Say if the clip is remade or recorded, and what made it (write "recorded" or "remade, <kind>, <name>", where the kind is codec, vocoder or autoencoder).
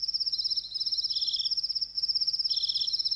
recorded